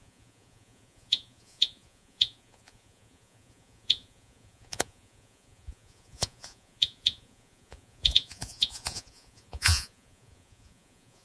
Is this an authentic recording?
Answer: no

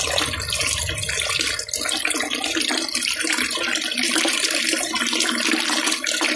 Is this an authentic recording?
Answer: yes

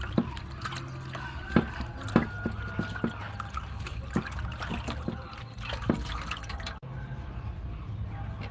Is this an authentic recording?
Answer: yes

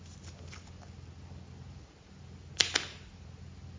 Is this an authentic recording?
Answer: yes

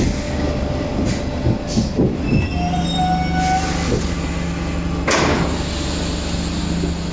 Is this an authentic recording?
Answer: yes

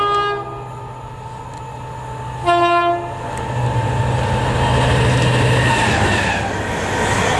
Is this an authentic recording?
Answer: yes